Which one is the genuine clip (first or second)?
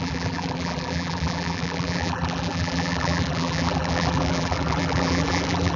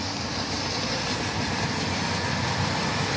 second